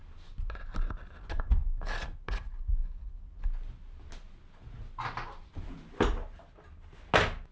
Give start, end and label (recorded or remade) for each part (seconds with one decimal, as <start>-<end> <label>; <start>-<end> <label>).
0.0-7.5 recorded